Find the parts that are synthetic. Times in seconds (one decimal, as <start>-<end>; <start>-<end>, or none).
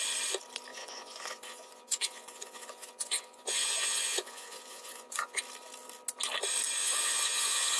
0.7-5.4; 6.8-7.8